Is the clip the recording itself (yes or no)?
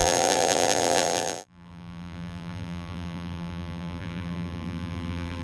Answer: no